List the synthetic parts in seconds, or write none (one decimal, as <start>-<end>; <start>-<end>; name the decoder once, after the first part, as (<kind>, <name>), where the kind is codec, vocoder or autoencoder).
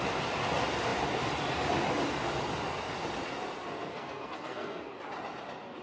3.9-4.9 (codec, SNAC)